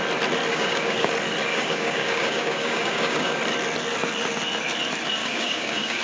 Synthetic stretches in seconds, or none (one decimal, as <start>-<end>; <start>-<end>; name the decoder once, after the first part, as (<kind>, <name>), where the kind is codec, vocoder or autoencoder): 0.5-1.1 (codec, DAC); 1.5-3.4; 5.2-6.0